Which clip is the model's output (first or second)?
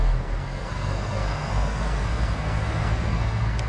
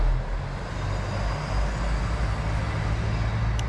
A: first